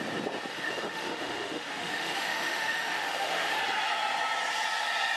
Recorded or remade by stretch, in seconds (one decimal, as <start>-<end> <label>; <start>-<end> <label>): 0.0-0.5 recorded; 0.5-3.6 remade; 3.6-5.2 recorded